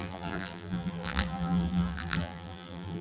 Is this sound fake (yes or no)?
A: yes